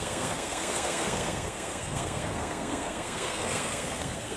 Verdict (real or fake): fake